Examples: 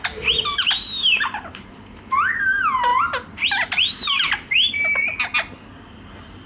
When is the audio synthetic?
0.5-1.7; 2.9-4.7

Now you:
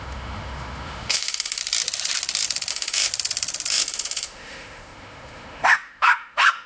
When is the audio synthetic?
0.0-1.6; 2.7-3.1; 3.7-6.7

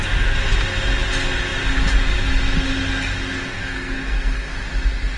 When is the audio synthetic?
3.5-4.5